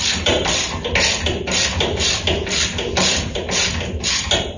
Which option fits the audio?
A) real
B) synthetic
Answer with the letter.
A